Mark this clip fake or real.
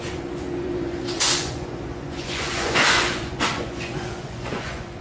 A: fake